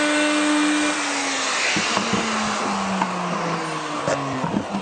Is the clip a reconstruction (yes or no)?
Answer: no